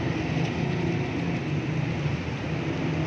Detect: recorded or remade recorded